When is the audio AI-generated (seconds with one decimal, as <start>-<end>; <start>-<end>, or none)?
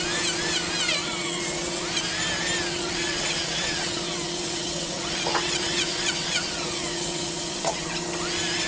1.0-1.8; 2.7-7.9